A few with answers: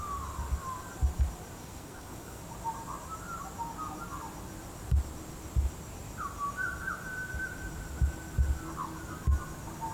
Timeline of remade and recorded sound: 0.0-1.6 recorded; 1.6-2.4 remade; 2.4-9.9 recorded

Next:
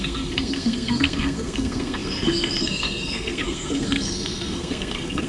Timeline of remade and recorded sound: 0.0-5.3 remade

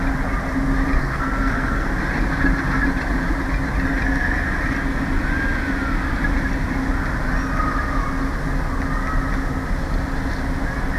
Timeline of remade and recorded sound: 0.0-1.0 recorded; 1.0-1.9 remade; 1.9-11.0 recorded

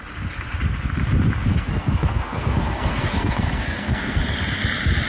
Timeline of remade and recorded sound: 0.0-1.5 recorded; 1.5-4.2 remade; 4.2-5.1 recorded